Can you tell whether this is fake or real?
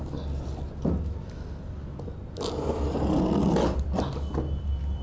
real